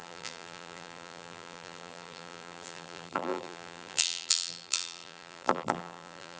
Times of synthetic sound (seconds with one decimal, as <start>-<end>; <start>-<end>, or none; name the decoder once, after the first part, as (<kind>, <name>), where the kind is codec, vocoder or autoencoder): 0.0-6.4 (vocoder, BigVGAN v2)